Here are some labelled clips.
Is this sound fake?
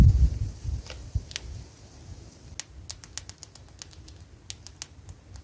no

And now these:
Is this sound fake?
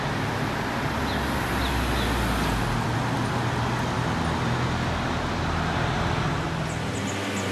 no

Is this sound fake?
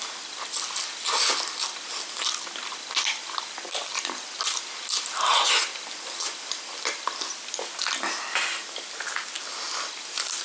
no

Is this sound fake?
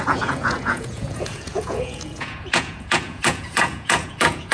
yes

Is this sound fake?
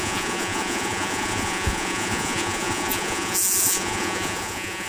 yes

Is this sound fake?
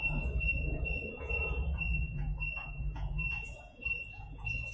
yes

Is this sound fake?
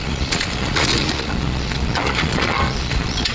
yes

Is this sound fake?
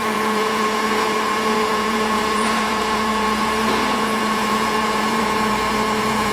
yes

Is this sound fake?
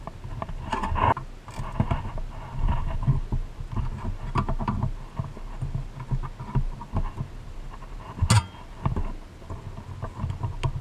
no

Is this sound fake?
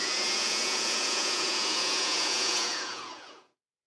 yes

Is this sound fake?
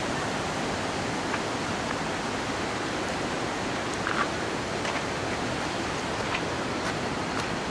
no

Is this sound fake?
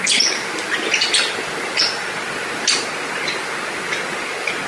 no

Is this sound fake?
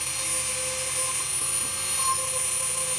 no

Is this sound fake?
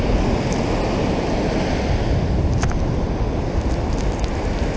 no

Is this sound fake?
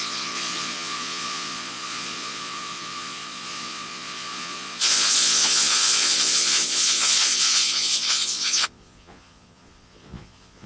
yes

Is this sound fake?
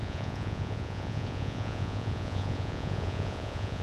yes